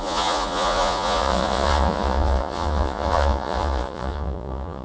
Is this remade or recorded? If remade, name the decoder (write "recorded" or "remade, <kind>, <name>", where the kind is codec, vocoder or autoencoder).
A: remade, vocoder, Vocos